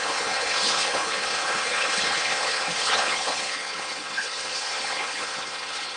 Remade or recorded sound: remade